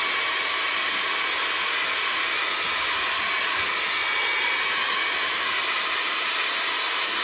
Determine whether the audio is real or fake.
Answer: real